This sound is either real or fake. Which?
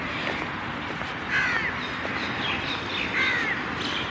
real